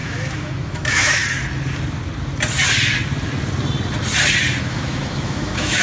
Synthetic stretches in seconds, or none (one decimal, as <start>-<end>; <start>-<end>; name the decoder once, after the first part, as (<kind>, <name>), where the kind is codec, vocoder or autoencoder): 0.0-1.2 (autoencoder, DAC-VAE); 4.6-5.8